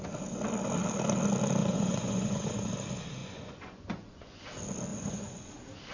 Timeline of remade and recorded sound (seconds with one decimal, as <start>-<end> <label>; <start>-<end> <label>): 0.0-1.6 recorded; 1.6-2.7 remade; 2.7-3.2 recorded; 3.2-4.4 remade; 4.4-4.9 recorded; 4.9-5.5 remade; 5.5-5.9 recorded